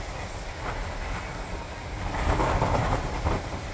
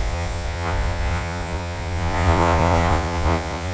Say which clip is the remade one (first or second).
second